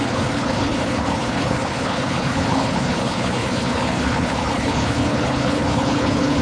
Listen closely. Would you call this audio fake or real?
fake